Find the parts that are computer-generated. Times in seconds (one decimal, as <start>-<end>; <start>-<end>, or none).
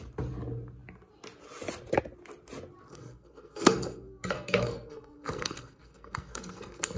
2.9-7.0